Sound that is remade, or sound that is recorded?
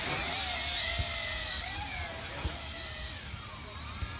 recorded